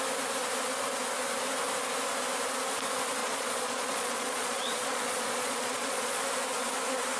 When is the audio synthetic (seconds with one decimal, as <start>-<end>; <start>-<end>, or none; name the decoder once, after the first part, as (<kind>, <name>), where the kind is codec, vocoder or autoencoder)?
3.2-6.2 (vocoder, Vocos)